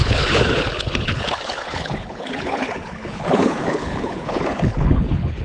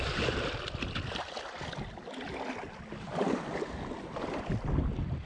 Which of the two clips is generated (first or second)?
first